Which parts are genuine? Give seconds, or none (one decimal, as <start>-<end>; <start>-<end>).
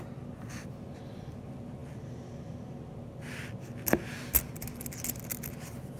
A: 0.0-6.0